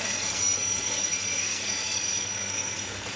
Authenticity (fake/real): fake